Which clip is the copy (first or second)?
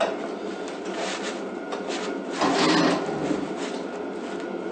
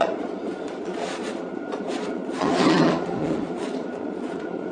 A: second